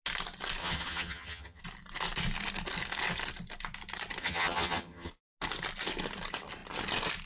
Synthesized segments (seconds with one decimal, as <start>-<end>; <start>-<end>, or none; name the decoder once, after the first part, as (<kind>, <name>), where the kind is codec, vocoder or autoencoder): 0.6-1.6 (vocoder, HiFi-GAN); 4.2-5.1